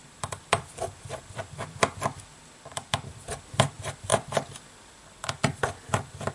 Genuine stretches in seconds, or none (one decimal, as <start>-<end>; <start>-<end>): 0.7-4.1

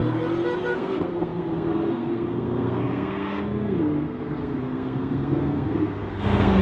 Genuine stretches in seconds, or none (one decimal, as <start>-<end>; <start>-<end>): 0.0-0.7